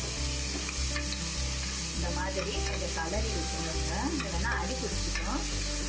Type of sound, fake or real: real